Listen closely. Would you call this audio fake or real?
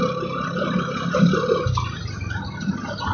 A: real